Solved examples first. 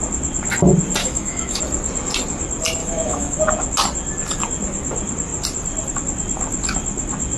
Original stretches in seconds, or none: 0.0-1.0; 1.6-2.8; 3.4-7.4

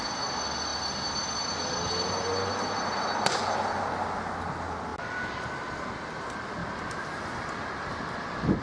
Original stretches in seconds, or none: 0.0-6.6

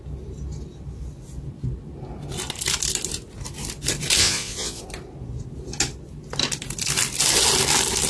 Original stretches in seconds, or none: 0.0-4.2; 4.8-8.1